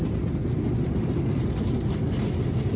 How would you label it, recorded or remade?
recorded